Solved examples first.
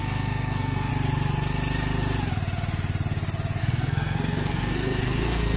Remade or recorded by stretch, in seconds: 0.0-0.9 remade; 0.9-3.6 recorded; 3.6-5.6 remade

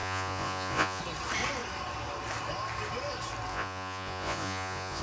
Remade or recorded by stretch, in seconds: 0.0-1.0 remade; 1.0-3.5 recorded; 3.5-5.0 remade